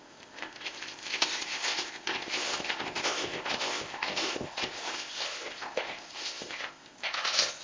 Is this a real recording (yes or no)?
no